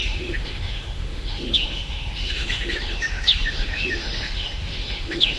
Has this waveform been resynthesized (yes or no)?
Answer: yes